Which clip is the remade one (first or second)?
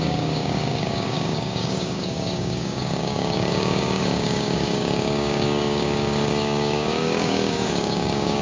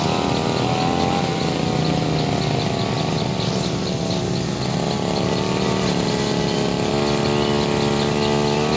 first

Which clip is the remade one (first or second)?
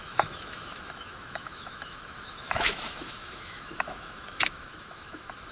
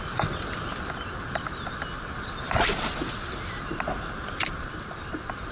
first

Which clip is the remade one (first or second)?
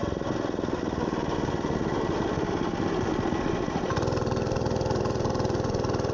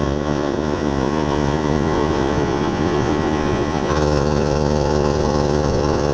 second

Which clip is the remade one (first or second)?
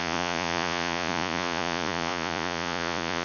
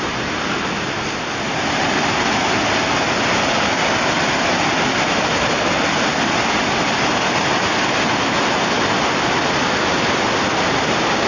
first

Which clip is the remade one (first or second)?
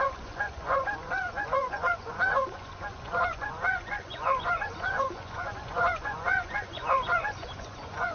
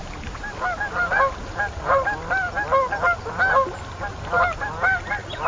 first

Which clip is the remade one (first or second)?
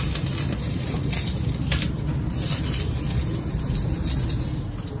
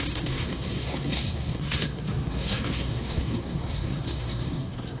second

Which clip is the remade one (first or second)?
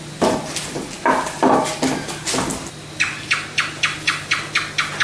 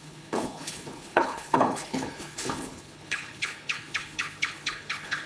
second